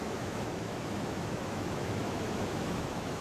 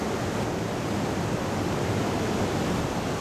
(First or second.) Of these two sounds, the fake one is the first